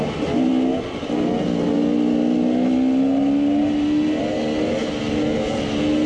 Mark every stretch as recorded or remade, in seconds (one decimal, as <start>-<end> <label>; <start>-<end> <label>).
0.0-6.1 recorded